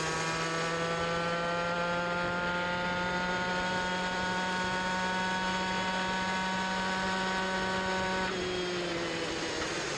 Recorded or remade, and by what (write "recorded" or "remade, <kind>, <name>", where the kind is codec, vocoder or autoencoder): recorded